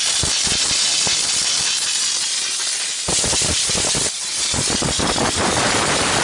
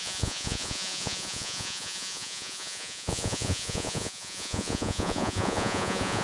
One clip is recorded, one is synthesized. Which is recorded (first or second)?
first